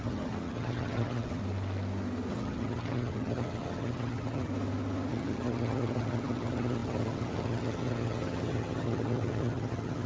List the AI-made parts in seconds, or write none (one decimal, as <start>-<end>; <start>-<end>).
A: 0.0-1.4; 2.3-4.5; 5.1-10.1